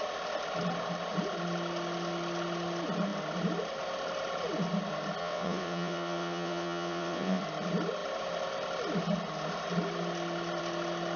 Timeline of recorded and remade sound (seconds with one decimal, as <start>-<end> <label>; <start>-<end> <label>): 0.0-5.2 recorded; 5.2-7.4 remade; 7.4-11.2 recorded